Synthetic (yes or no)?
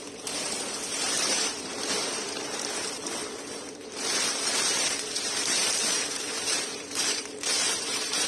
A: yes